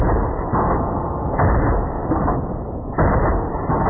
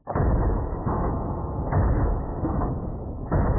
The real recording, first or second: first